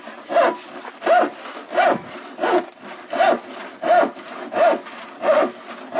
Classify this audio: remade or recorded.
recorded